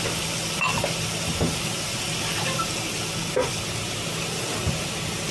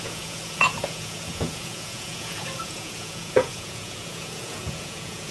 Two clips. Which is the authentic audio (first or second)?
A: first